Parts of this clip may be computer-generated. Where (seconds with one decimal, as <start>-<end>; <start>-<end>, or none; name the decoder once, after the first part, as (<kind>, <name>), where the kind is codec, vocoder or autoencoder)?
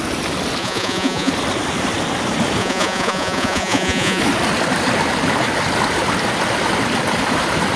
0.6-1.3 (vocoder, Vocos); 2.6-4.2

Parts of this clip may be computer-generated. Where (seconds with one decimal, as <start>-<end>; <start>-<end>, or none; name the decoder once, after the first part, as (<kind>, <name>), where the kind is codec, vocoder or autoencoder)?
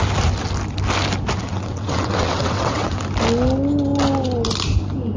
1.4-3.0 (vocoder, WaveNeXt)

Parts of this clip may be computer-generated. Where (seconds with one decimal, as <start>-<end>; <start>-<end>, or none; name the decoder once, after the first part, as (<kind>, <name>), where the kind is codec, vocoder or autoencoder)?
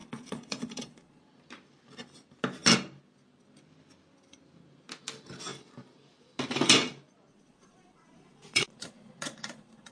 0.0-1.2 (vocoder, Vocos); 7.3-9.9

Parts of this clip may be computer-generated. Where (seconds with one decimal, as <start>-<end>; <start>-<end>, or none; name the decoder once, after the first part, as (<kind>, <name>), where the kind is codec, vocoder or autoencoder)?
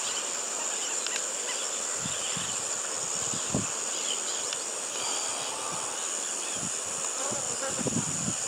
none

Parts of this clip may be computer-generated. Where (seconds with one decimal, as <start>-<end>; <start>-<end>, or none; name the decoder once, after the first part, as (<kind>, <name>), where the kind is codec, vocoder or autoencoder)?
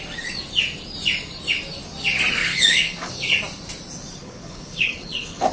2.4-3.1 (codec, HILCodec); 4.2-5.5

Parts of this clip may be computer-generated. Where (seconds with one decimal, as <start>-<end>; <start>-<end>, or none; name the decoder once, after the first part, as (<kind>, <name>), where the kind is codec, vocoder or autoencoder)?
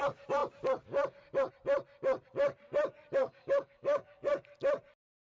3.2-4.3 (codec, DAC)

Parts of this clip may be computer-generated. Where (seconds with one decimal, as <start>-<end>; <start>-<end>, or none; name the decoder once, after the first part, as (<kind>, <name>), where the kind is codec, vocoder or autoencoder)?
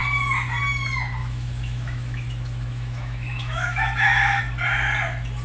1.2-4.4 (autoencoder, DAC-VAE)